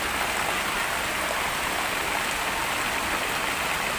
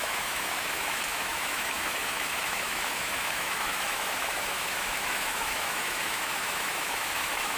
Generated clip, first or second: second